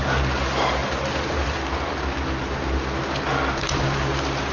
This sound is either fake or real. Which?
real